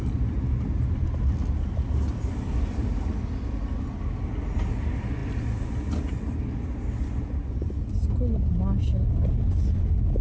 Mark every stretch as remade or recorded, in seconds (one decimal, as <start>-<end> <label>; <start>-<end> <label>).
0.0-10.2 recorded